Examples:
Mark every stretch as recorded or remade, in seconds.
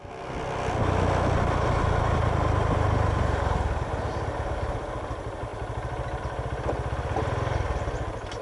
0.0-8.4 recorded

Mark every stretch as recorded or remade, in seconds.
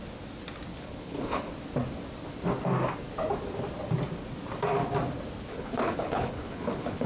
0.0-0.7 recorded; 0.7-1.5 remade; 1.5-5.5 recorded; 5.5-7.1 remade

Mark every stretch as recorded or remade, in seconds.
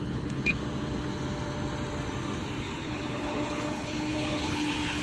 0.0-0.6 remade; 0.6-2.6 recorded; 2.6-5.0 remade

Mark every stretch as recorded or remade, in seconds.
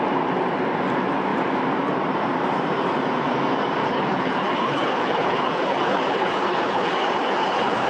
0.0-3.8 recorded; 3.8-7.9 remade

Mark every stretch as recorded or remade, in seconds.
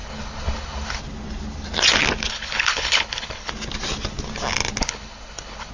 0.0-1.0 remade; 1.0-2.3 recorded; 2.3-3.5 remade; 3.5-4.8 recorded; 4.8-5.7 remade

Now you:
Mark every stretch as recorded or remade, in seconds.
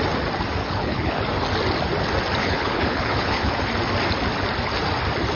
0.0-0.6 recorded; 0.6-1.2 remade; 1.2-2.4 recorded; 2.4-3.5 remade; 3.5-5.4 recorded